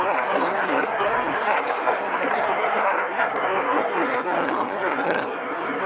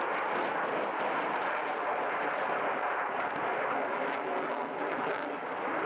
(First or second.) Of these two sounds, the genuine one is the second